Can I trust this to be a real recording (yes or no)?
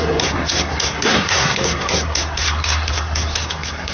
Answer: no